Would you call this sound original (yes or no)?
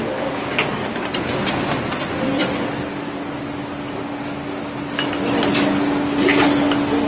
yes